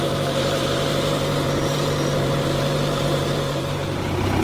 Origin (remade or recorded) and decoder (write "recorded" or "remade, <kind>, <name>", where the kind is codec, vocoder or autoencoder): remade, vocoder, BigVGAN v2